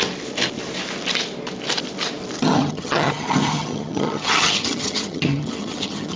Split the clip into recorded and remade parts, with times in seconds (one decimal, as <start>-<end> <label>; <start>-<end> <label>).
0.0-2.4 recorded; 2.4-6.2 remade